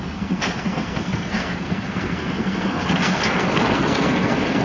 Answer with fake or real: fake